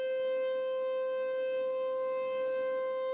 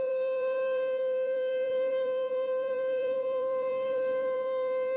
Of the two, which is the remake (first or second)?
second